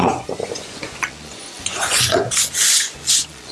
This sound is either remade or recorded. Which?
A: remade